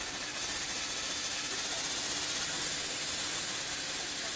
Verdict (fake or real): real